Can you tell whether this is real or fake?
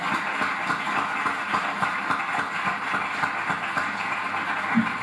real